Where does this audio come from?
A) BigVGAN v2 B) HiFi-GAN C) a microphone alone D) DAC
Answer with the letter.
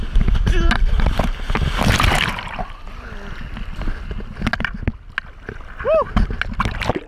C